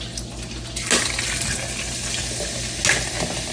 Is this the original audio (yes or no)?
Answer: yes